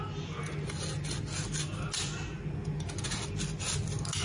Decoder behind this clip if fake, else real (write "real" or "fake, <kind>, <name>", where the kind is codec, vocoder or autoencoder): real